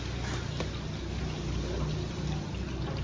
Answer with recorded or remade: recorded